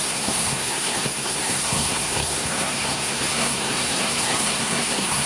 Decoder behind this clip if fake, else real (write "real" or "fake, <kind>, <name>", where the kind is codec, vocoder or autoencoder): fake, codec, SNAC